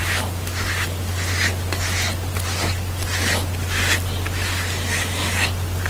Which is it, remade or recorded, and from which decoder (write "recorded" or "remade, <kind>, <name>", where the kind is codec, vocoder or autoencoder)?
recorded